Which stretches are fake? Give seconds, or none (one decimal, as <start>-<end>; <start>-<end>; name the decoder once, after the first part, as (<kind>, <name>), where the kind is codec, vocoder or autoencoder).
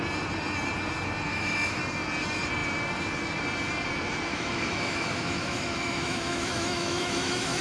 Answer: 1.3-1.8 (autoencoder, DAC-VAE); 4.3-7.6